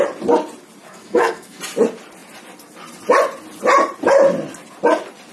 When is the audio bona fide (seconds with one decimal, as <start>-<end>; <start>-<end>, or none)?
0.0-0.9; 1.6-5.3